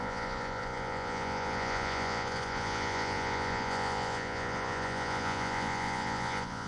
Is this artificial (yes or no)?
yes